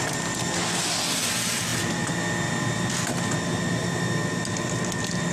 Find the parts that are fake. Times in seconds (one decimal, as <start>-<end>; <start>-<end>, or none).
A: none